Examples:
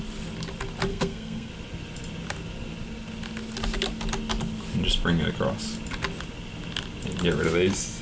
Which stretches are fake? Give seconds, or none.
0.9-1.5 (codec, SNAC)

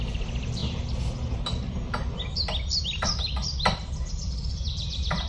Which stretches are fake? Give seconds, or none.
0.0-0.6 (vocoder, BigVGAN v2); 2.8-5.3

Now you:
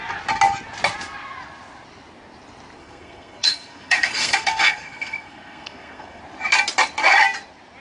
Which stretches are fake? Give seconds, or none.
2.8-6.2 (codec, SNAC)